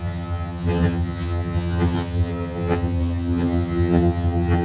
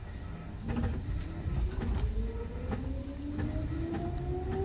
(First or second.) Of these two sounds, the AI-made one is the first